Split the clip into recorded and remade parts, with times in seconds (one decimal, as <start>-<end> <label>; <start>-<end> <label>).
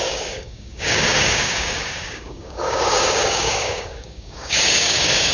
0.0-5.3 remade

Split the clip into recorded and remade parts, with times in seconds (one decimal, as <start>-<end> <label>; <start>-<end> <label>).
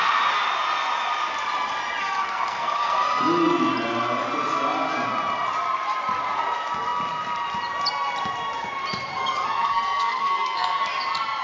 0.0-2.0 recorded; 2.0-3.2 remade; 3.2-9.1 recorded; 9.1-10.8 remade; 10.8-11.4 recorded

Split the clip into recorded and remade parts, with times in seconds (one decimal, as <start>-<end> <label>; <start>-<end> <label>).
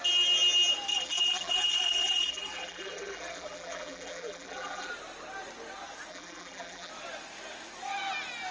0.0-0.9 recorded; 0.9-4.9 remade; 4.9-6.1 recorded; 6.1-6.9 remade; 6.9-8.5 recorded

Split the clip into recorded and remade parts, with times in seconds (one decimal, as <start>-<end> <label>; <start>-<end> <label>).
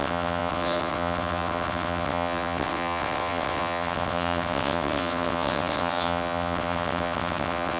0.0-7.8 remade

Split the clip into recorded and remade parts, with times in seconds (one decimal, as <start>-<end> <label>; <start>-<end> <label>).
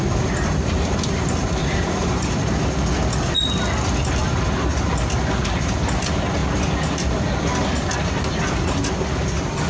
0.0-1.6 recorded; 1.6-2.3 remade; 2.3-9.7 recorded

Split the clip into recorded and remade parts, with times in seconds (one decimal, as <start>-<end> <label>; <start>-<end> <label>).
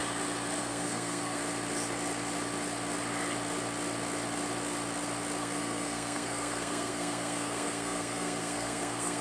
0.0-0.6 recorded; 0.6-1.4 remade; 1.4-5.4 recorded; 5.4-9.2 remade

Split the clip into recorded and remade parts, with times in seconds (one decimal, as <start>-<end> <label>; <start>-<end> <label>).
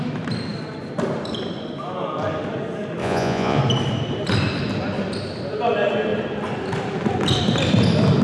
0.0-3.0 recorded; 3.0-3.6 remade; 3.6-8.2 recorded